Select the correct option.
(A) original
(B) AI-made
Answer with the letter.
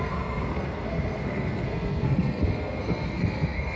B